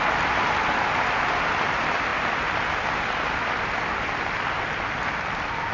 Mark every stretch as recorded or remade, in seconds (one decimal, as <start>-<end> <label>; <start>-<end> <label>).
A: 0.0-5.7 recorded